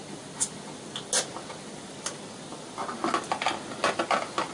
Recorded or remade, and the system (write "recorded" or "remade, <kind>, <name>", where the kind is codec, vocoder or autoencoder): recorded